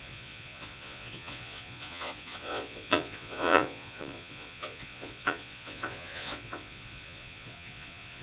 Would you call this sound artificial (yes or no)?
yes